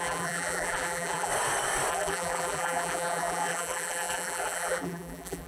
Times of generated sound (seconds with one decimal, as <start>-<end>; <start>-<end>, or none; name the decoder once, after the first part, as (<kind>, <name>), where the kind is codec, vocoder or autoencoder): 0.0-1.3 (vocoder, BigVGAN v2); 1.9-5.5